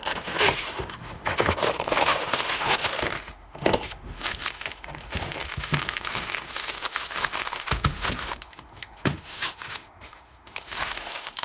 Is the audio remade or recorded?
remade